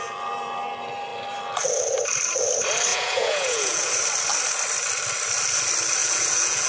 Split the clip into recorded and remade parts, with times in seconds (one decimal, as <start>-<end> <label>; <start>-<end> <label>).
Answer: 0.0-2.9 recorded; 2.9-3.9 remade; 3.9-6.0 recorded; 6.0-6.7 remade